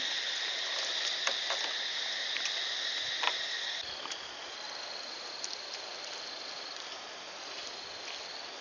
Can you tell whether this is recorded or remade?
recorded